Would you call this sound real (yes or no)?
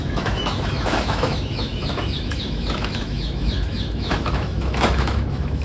no